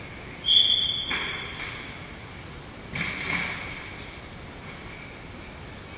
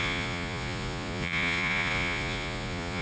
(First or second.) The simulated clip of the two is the second